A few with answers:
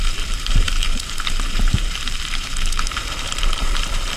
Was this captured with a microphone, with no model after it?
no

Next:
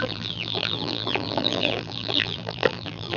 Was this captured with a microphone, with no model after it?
no